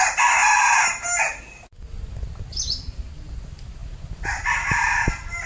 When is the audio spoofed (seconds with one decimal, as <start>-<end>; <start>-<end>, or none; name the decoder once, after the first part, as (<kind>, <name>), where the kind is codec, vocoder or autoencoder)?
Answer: none